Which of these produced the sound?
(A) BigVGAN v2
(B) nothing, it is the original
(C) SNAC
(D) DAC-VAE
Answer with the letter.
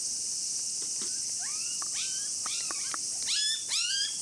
B